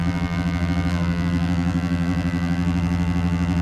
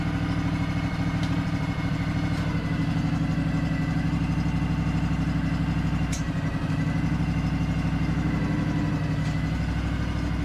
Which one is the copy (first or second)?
first